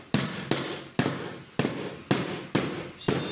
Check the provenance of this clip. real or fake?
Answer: real